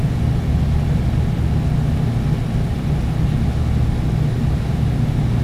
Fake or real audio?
real